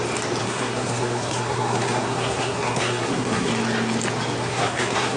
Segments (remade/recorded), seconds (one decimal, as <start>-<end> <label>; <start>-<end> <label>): 0.0-0.4 recorded; 0.4-3.5 remade; 3.5-4.4 recorded; 4.4-5.2 remade